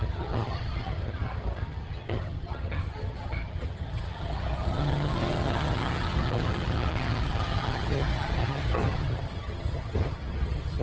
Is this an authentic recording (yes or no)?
no